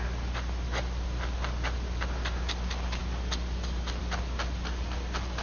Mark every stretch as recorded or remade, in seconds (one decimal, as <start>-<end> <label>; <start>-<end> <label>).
0.0-5.4 recorded